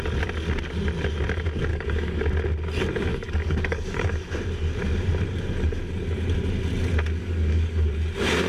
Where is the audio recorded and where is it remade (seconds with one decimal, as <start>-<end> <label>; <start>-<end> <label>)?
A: 0.0-1.7 recorded; 1.7-2.3 remade; 2.3-3.1 recorded; 3.1-4.3 remade; 4.3-7.2 recorded; 7.2-7.7 remade; 7.7-8.5 recorded